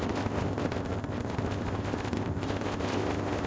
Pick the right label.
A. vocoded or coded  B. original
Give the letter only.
A